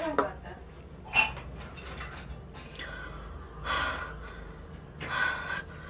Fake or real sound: real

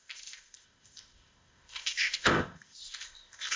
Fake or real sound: fake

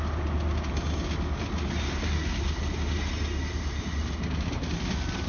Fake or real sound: real